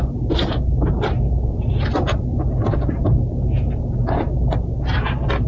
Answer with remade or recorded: recorded